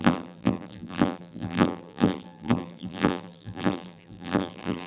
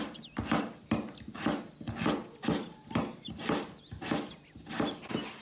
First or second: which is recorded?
second